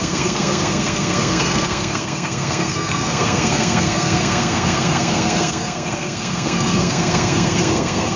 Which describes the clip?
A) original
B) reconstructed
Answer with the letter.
B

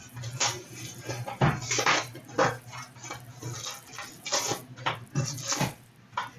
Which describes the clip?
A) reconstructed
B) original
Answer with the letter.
B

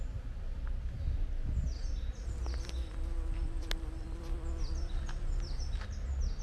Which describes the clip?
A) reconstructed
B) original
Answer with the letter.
B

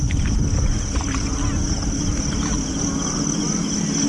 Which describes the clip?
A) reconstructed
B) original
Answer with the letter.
B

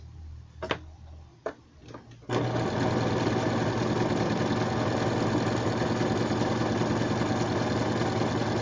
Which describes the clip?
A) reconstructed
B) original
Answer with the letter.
B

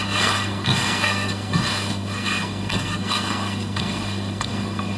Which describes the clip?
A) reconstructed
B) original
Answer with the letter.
A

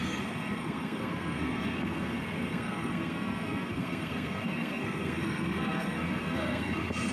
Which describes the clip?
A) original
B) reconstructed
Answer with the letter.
B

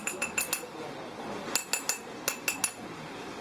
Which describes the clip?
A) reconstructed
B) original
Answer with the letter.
B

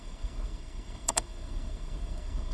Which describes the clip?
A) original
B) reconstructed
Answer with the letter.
B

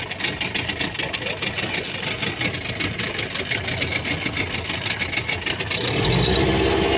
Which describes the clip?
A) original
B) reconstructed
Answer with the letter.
A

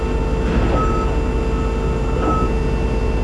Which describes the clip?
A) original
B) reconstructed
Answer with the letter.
A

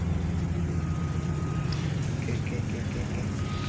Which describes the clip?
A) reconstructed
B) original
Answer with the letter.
B